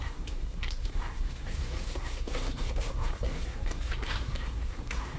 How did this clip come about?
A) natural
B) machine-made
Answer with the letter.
B